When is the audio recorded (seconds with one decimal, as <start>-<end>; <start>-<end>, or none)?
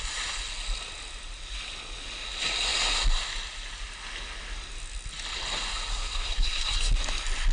0.0-5.9; 6.9-7.5